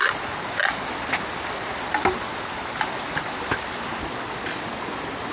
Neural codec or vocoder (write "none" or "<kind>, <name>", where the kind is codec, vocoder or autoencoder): none